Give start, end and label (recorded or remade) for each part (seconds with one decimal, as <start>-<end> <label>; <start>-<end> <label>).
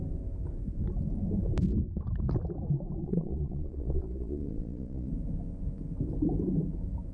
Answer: 0.0-3.0 recorded; 3.0-5.1 remade; 5.1-7.1 recorded